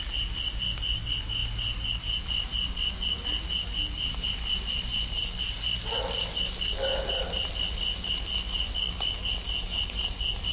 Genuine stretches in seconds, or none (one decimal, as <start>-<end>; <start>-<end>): 0.0-8.8; 9.3-10.5